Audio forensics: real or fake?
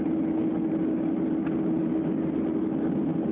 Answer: real